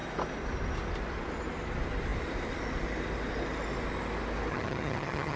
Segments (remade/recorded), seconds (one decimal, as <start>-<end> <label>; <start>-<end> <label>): 0.0-4.5 recorded; 4.5-5.4 remade